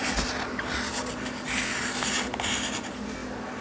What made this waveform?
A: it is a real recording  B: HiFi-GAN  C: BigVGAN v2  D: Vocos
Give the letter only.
A